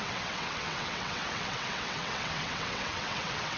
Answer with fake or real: fake